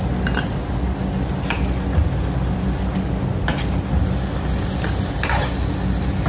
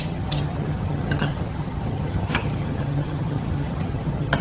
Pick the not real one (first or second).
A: second